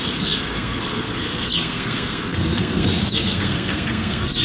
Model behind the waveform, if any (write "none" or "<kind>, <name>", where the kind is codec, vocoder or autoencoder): codec, SNAC